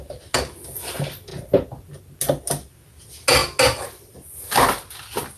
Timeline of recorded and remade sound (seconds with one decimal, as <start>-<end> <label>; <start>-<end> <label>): 0.0-5.4 recorded